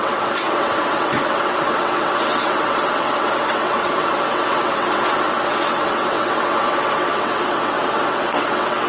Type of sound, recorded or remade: remade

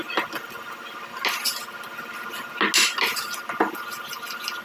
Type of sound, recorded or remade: recorded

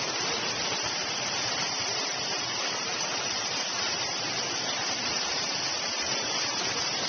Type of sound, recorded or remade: remade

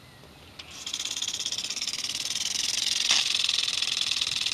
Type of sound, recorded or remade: recorded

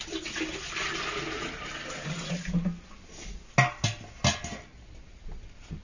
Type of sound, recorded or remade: recorded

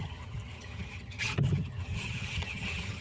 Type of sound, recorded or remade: remade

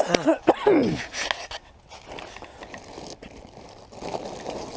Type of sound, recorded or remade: recorded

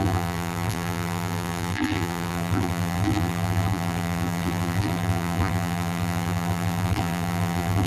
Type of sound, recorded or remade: remade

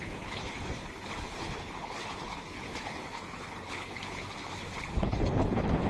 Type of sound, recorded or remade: remade